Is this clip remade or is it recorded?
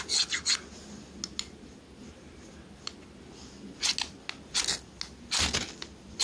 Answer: recorded